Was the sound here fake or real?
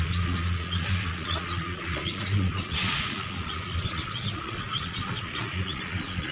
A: fake